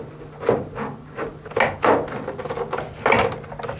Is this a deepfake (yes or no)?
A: no